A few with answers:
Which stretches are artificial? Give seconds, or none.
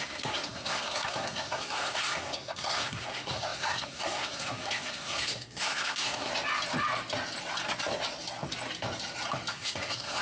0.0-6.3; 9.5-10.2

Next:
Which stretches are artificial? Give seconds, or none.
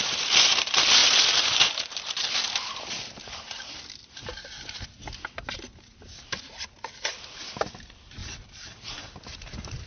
1.0-3.7; 8.2-9.9